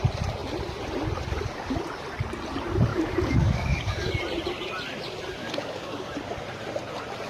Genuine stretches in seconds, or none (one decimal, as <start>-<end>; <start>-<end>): 0.0-2.9; 4.1-5.4; 6.1-7.3

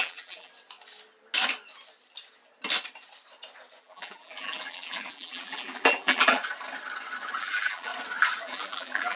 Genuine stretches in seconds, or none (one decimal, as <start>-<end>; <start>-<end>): 0.5-3.8; 6.4-7.4; 7.9-8.4